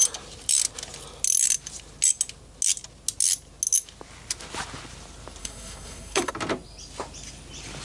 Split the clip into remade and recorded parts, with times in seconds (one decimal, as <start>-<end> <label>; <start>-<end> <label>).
0.0-5.4 recorded; 5.4-6.3 remade; 6.3-7.8 recorded